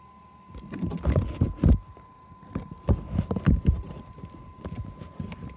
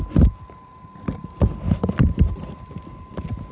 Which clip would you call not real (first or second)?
second